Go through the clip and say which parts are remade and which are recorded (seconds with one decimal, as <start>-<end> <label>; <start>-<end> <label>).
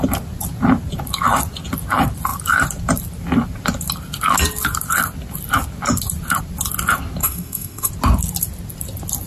0.0-7.2 recorded; 7.2-7.9 remade; 7.9-9.3 recorded